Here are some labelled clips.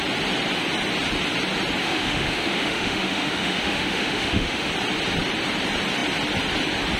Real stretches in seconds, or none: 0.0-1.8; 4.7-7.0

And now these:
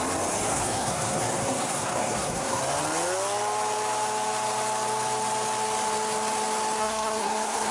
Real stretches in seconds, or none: 0.0-0.5; 2.6-6.8

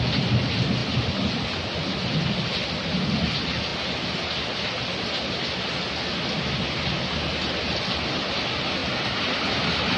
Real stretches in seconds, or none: 0.0-8.8; 9.4-10.0

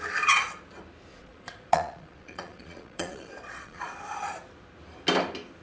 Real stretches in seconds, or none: 0.0-1.1; 3.9-5.6

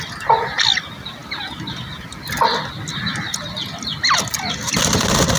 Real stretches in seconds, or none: 0.0-5.4

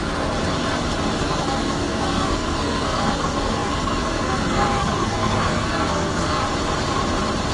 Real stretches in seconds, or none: 0.0-1.2; 6.4-7.5

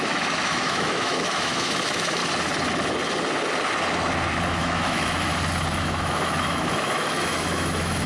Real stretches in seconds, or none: 2.2-4.5; 5.3-5.8